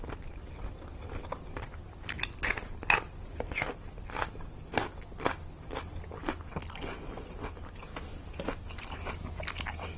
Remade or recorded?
recorded